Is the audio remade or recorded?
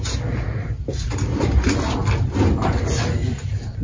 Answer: recorded